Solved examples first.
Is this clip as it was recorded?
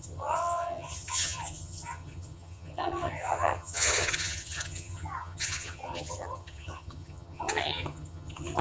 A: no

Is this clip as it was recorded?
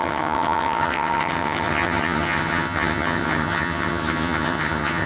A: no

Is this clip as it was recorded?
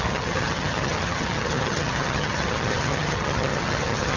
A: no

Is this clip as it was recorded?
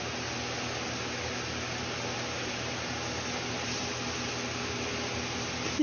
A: yes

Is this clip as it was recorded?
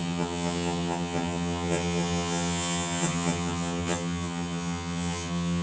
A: no